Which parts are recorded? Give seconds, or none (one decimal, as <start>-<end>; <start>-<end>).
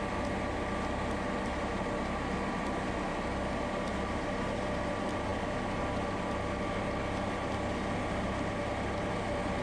0.0-9.6